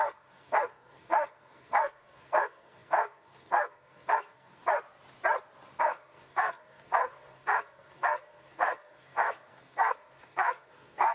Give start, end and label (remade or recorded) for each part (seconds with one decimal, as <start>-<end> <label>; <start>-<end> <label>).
0.0-4.6 remade; 4.6-5.8 recorded; 5.8-11.1 remade